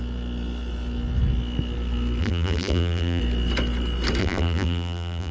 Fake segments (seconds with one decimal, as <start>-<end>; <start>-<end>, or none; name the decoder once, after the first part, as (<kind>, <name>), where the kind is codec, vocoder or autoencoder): 2.2-3.2 (vocoder, BigVGAN v2); 4.2-5.3